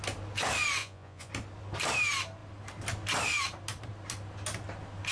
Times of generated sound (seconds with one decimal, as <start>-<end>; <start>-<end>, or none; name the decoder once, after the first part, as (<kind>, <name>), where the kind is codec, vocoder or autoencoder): 0.8-1.3 (vocoder, Vocos)

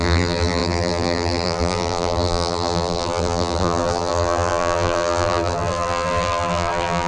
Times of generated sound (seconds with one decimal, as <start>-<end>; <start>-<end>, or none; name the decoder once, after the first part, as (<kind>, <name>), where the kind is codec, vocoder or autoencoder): 0.0-7.1 (vocoder, BigVGAN v2)